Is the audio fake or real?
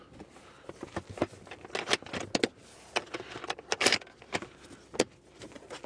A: real